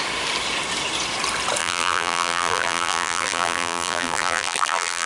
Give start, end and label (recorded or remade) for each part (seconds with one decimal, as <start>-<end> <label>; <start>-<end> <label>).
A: 0.0-1.6 recorded; 1.6-5.1 remade